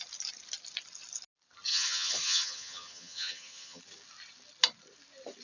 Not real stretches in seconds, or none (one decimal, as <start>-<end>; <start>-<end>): 1.7-3.8